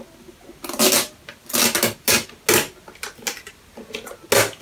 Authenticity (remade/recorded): recorded